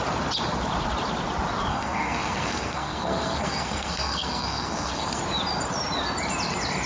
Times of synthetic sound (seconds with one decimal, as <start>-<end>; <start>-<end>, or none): 1.7-5.2